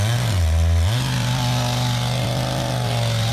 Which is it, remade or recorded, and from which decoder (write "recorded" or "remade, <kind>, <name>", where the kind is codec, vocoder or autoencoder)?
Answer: recorded